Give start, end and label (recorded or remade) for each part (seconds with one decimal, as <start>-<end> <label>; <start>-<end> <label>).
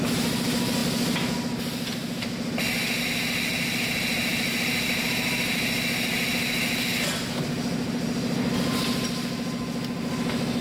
0.0-10.6 recorded